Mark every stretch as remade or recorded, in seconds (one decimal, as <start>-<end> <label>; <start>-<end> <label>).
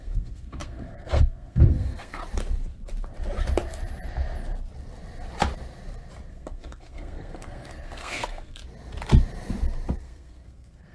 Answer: 0.0-2.2 remade; 2.2-6.3 recorded; 6.3-8.6 remade; 8.6-10.0 recorded; 10.0-10.9 remade